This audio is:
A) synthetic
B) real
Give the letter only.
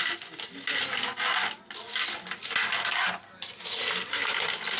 B